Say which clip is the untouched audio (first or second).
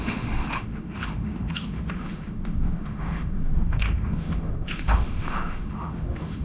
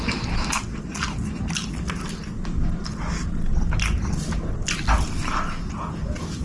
second